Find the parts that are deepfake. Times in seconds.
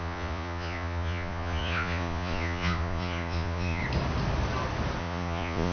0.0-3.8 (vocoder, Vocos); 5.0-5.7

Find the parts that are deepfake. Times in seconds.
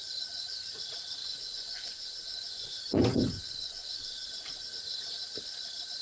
1.2-4.7 (vocoder, Vocos)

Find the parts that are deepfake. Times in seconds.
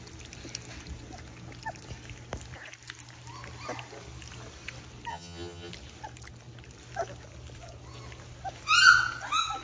5.1-5.7 (vocoder, HiFi-GAN)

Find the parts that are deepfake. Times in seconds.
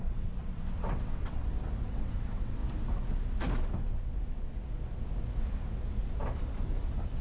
0.0-1.4 (vocoder, WaveNeXt); 1.9-2.6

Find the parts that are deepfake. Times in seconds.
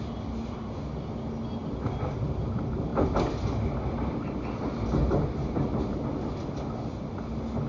none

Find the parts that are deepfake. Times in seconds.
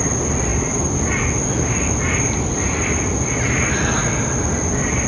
none